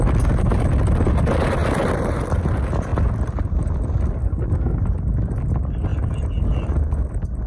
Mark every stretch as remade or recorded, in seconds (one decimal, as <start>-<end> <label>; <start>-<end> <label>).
0.0-4.2 recorded; 4.2-4.8 remade; 4.8-7.5 recorded